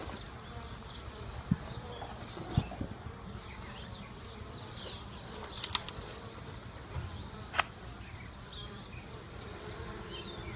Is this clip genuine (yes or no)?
yes